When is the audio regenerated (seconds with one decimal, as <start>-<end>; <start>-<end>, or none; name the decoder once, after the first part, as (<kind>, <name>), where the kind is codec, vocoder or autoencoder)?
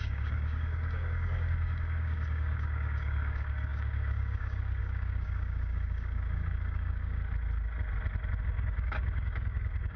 0.0-7.2 (codec, DAC); 8.4-10.0